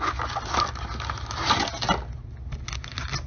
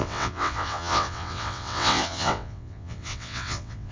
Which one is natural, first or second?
first